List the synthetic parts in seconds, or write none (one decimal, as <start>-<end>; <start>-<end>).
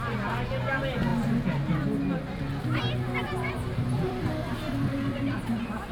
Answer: 3.2-4.2